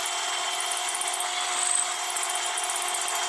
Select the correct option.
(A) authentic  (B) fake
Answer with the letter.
A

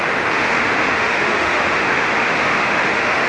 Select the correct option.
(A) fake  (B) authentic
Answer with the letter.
A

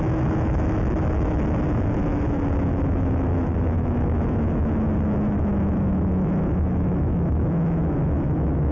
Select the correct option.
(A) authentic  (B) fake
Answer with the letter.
B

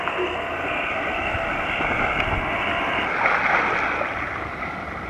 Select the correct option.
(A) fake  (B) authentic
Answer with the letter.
B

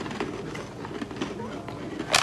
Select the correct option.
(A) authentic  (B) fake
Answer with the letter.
A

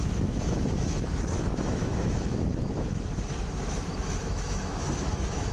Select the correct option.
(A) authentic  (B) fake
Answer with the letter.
B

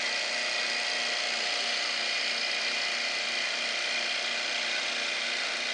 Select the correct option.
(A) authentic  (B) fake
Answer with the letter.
A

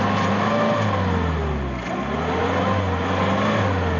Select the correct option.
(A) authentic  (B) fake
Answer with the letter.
A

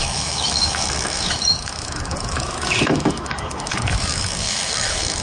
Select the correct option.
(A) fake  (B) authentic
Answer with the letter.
A